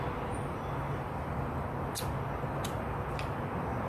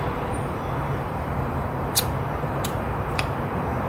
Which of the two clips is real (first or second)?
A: first